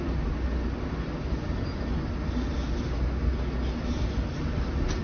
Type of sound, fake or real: real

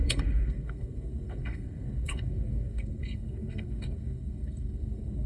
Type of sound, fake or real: fake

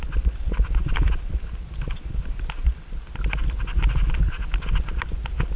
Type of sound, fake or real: real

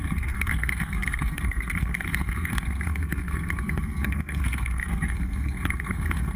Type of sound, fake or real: fake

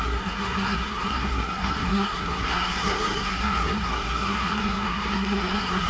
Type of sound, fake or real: fake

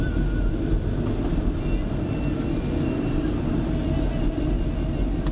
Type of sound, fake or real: real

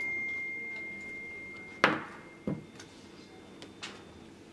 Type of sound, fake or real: real